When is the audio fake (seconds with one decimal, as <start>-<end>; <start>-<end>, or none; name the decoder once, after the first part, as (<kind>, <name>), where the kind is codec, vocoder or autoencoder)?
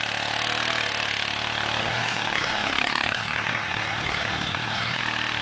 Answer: 1.8-5.0 (codec, SNAC)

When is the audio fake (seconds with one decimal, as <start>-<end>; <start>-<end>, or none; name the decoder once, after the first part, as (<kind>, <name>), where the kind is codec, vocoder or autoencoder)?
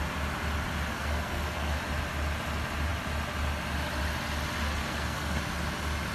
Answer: 0.9-1.8 (codec, SNAC); 4.8-5.4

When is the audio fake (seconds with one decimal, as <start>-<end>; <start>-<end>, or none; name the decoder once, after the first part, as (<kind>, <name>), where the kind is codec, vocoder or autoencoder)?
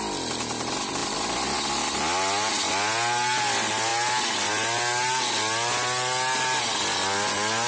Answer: none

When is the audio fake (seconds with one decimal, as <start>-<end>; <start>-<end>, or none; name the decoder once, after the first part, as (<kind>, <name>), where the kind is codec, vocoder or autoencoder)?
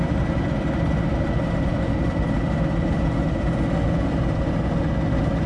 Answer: none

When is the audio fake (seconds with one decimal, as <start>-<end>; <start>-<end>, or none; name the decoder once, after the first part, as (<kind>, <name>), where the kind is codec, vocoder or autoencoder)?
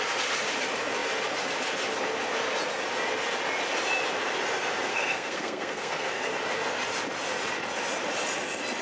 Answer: 4.9-6.3 (codec, SNAC)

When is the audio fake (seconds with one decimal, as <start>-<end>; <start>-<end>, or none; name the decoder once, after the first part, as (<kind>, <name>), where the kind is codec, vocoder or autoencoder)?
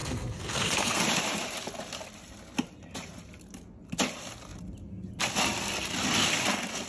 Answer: 0.0-1.0 (codec, SNAC)